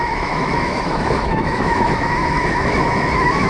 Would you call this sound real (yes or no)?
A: no